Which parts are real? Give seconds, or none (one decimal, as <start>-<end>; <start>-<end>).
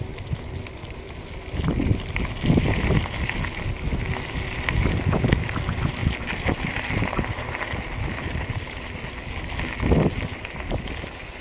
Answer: 0.0-11.4